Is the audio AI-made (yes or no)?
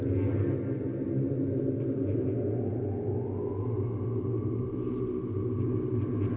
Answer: no